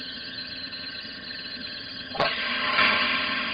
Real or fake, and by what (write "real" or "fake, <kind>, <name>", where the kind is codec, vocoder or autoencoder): fake, vocoder, HiFi-GAN